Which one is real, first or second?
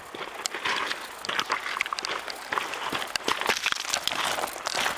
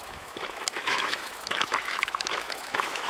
first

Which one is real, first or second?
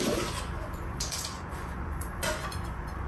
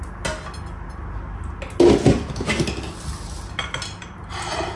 second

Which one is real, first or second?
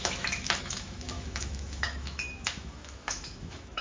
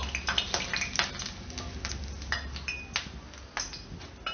second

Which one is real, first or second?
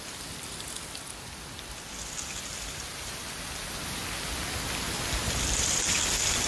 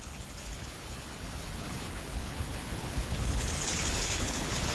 first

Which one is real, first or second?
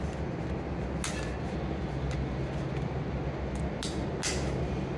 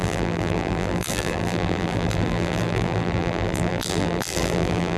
first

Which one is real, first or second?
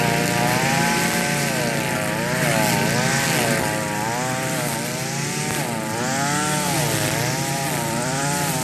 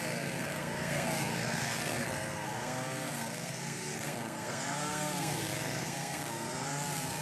first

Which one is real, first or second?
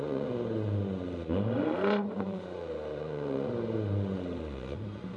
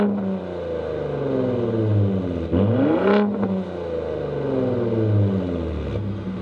second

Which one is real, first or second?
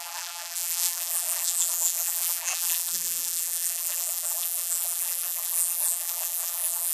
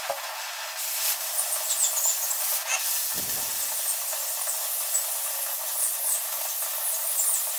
second